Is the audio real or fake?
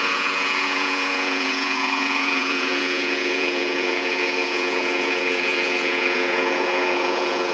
fake